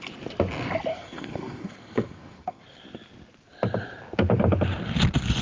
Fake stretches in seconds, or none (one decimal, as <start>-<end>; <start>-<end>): 0.9-2.6